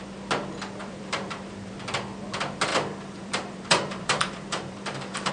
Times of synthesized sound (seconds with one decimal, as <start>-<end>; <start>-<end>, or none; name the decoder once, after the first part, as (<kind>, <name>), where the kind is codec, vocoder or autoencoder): 0.8-1.7 (vocoder, BigVGAN v2); 2.7-5.3